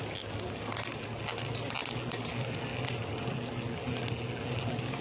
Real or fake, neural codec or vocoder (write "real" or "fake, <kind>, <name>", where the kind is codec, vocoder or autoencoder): real